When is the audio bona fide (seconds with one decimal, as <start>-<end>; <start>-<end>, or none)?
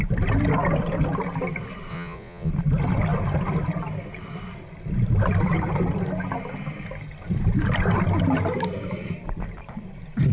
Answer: 0.0-1.9; 2.5-10.3